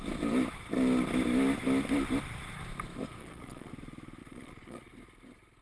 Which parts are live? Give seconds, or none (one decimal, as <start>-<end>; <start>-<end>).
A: 0.0-3.2; 3.7-4.2; 4.9-5.6